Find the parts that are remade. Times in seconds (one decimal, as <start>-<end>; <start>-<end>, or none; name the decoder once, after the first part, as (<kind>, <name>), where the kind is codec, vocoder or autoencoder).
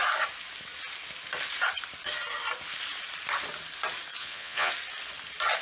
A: 4.2-4.7 (vocoder, Vocos)